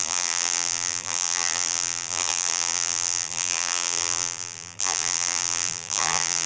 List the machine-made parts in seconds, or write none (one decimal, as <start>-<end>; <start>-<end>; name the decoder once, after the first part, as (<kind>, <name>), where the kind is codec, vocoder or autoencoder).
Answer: 0.0-6.5 (vocoder, BigVGAN v2)